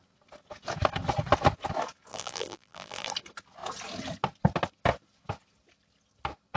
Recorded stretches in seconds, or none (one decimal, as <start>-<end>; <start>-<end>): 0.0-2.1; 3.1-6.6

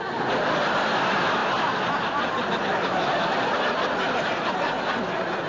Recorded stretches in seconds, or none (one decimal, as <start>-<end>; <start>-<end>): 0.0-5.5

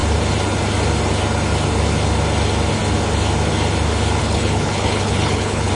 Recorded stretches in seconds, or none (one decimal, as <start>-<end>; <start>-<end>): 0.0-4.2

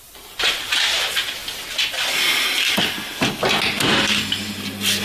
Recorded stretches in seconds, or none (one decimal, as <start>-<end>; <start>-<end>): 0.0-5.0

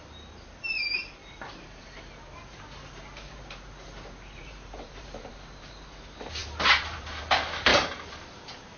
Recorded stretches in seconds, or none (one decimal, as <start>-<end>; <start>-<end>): 7.7-8.8

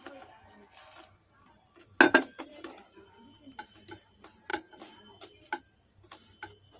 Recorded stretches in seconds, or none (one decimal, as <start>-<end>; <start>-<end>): 0.0-4.5; 5.0-6.8